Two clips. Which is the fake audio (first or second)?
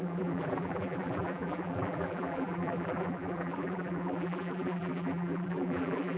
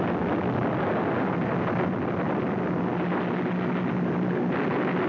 first